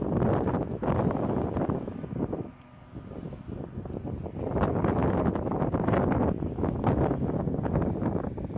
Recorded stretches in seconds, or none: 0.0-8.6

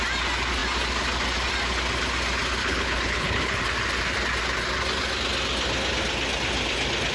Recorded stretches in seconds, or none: 0.0-2.6; 3.6-7.1